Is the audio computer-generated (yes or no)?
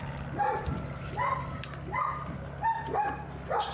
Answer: no